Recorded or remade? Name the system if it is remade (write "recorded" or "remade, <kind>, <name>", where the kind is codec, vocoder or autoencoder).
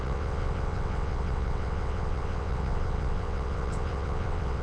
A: remade, vocoder, WaveNeXt